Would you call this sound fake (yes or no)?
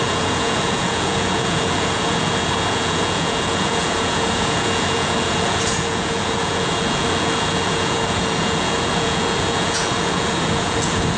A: yes